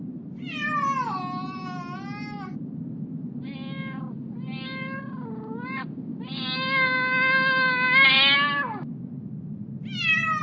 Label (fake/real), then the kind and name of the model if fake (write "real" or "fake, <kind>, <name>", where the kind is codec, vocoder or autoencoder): real